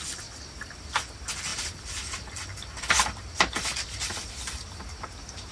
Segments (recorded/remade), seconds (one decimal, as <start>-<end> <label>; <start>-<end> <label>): 0.0-5.5 recorded